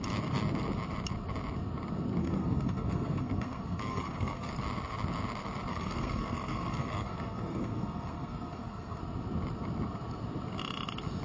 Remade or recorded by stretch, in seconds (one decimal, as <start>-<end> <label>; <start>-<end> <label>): 0.0-2.2 recorded; 2.2-4.5 remade; 4.5-5.7 recorded; 5.7-9.0 remade; 9.0-11.2 recorded